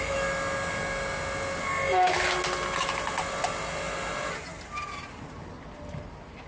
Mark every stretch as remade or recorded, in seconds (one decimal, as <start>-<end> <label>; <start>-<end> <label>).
0.0-6.5 recorded